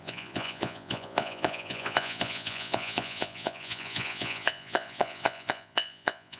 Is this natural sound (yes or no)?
no